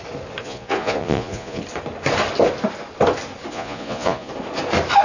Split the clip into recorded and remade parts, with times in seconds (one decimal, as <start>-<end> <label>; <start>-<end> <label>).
0.0-0.4 recorded; 0.4-1.6 remade; 1.6-3.5 recorded; 3.5-4.3 remade; 4.3-5.0 recorded